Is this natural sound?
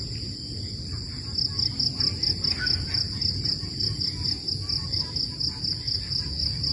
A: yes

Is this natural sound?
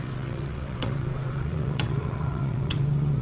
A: no